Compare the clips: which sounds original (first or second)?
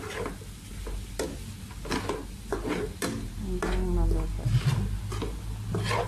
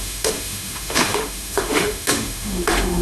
first